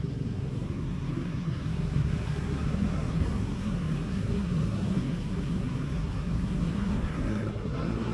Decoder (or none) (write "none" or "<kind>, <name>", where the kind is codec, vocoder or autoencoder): codec, SNAC